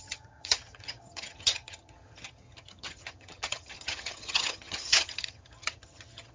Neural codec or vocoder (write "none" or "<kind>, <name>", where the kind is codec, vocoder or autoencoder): vocoder, HiFi-GAN